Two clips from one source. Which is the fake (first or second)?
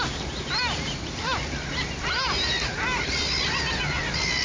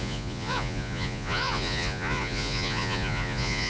second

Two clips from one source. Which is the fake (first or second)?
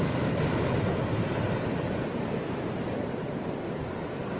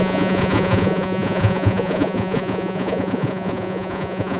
second